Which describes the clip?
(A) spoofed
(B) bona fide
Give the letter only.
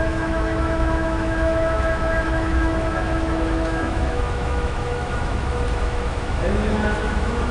A